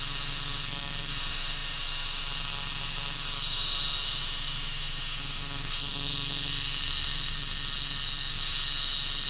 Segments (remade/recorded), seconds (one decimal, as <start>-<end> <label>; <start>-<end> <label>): 0.0-9.3 remade